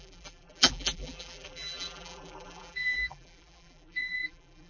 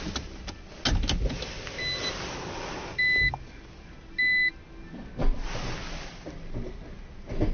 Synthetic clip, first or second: first